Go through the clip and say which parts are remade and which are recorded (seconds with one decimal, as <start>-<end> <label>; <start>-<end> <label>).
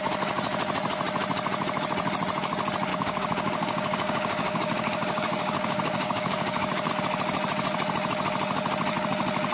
0.0-2.9 recorded; 2.9-6.9 remade; 6.9-9.5 recorded